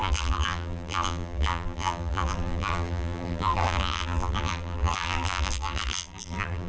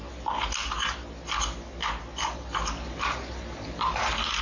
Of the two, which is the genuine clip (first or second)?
second